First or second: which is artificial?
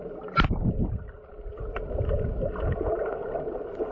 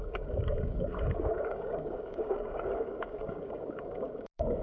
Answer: second